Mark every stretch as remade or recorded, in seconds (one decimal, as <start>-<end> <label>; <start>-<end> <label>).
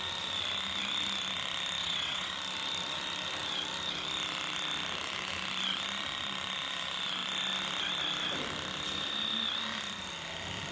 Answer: 0.0-1.8 recorded; 1.8-2.3 remade; 2.3-10.7 recorded